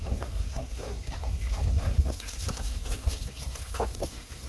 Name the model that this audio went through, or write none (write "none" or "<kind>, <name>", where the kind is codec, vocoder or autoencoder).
codec, SNAC